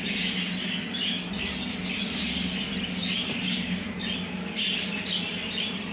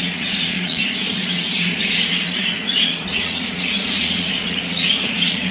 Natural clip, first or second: first